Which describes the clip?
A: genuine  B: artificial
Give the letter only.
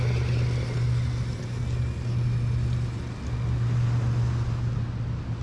A